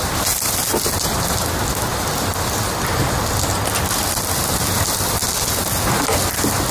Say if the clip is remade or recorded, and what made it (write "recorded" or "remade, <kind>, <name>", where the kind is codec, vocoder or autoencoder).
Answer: recorded